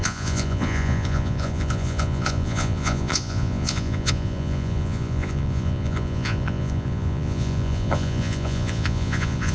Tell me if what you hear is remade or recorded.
remade